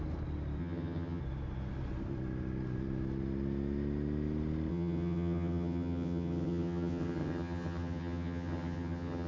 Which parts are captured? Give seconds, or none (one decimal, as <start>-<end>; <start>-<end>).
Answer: 0.0-0.6; 1.2-4.7